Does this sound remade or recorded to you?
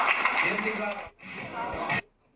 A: recorded